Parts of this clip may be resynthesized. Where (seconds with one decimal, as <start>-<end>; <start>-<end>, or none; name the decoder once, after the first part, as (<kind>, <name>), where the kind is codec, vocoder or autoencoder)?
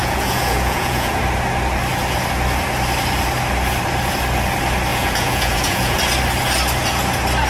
0.0-1.2 (vocoder, Vocos); 4.9-6.0